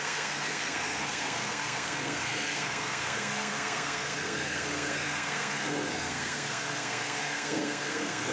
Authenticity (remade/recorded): remade